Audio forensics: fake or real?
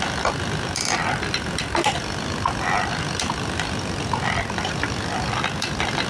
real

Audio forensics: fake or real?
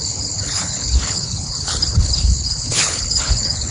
fake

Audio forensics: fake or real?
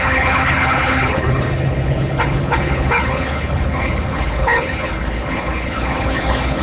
fake